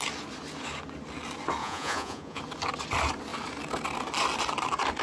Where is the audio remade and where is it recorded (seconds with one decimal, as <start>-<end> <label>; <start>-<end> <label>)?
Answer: 0.0-1.6 recorded; 1.6-2.4 remade; 2.4-5.0 recorded